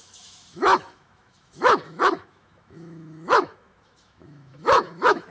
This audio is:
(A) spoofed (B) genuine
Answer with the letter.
A